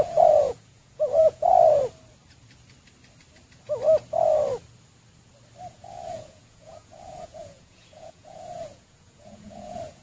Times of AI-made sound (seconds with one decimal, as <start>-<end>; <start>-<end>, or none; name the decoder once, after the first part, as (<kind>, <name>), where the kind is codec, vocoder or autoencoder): 0.0-1.5 (vocoder, Vocos); 5.7-10.0